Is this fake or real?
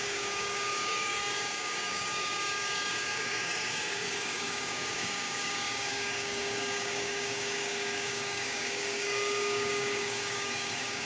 fake